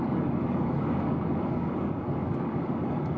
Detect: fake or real fake